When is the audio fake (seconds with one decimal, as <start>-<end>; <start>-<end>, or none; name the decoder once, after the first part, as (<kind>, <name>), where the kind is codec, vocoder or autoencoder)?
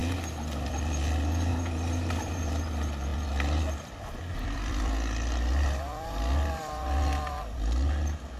1.5-2.6 (vocoder, BigVGAN v2)